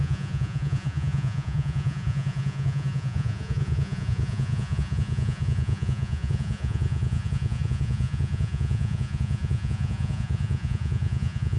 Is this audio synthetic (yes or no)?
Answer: yes